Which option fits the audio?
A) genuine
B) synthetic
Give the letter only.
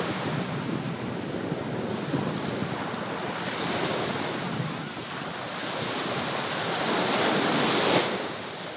A